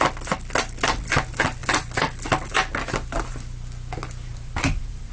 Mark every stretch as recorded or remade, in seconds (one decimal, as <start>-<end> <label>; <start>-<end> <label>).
0.0-1.6 recorded; 1.6-2.5 remade; 2.5-4.3 recorded; 4.3-5.1 remade